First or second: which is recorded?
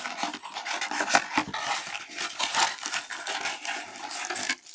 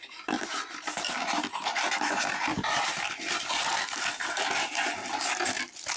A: first